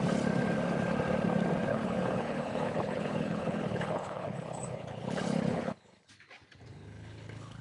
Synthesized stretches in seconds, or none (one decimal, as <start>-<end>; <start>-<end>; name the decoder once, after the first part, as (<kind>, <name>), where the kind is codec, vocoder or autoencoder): 1.7-6.1 (codec, HILCodec); 6.7-7.6